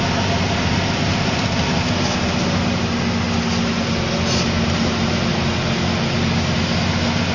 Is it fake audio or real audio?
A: real